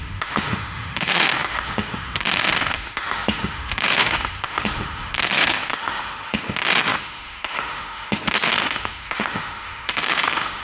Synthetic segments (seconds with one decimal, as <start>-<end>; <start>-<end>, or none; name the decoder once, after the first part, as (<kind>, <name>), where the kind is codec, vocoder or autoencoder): 0.0-10.6 (autoencoder, DAC-VAE)